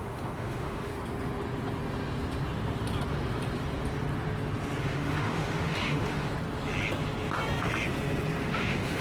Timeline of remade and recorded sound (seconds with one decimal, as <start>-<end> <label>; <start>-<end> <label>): 0.0-0.9 remade; 0.9-4.8 recorded; 4.8-6.3 remade; 6.3-8.4 recorded; 8.4-9.0 remade